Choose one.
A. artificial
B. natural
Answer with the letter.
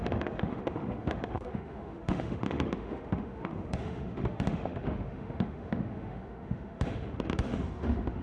A